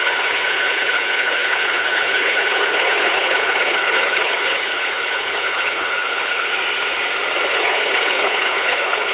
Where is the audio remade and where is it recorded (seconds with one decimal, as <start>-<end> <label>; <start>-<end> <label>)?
0.0-6.5 remade; 6.5-7.5 recorded; 7.5-9.1 remade